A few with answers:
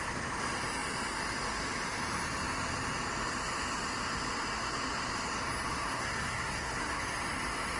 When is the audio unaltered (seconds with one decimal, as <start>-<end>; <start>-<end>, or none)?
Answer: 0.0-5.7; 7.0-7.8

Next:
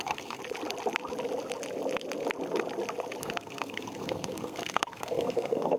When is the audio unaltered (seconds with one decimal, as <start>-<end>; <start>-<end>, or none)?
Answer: 0.4-3.2

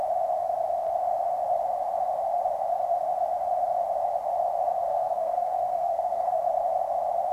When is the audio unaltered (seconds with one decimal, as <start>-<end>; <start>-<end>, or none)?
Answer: 0.0-4.9; 6.4-7.3

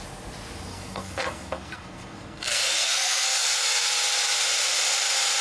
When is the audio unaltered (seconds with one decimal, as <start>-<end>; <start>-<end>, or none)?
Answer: 0.0-0.7; 3.9-5.4

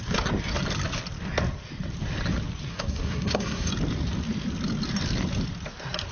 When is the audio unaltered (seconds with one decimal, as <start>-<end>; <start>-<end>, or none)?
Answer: 0.0-2.7; 3.7-6.1

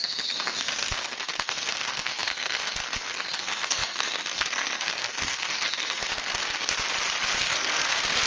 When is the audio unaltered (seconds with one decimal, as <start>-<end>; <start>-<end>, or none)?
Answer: 6.7-7.4

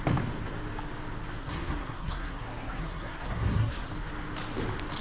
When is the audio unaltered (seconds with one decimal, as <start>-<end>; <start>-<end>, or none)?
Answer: 0.0-1.4; 3.9-5.0

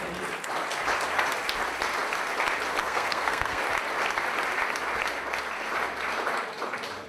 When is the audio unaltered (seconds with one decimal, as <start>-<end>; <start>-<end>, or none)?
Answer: 0.0-2.8; 3.6-7.1